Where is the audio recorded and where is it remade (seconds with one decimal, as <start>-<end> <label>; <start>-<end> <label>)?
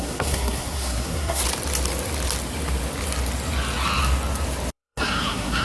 0.0-1.4 remade; 1.4-4.7 recorded; 4.7-5.6 remade